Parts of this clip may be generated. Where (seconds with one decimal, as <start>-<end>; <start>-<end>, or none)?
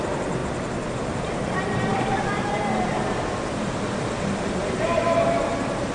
none